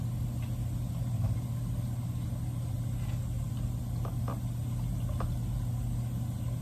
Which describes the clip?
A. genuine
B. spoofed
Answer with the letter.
A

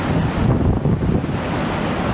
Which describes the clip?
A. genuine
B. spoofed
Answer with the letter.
A